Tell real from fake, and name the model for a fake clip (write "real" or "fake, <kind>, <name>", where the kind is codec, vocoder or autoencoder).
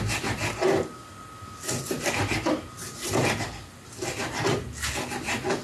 real